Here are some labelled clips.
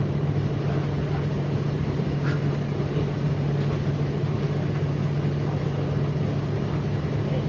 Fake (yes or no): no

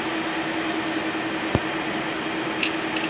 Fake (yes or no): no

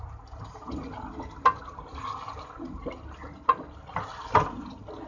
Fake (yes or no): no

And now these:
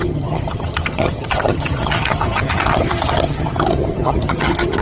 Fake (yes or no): yes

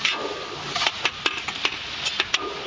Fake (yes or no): no